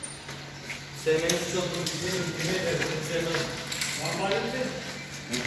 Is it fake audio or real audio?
real